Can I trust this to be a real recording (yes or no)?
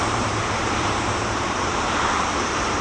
no